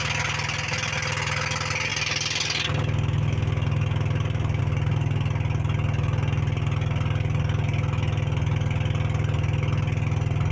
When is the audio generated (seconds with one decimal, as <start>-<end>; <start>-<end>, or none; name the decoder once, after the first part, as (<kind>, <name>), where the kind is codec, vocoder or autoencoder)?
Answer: none